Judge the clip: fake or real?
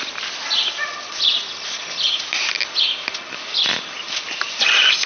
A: real